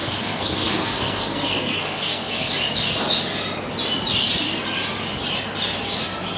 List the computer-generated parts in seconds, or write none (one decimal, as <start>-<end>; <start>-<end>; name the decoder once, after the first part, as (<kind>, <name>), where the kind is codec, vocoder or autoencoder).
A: 0.0-2.5 (codec, SNAC)